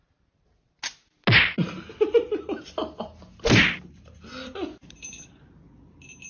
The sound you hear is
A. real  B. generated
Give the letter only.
A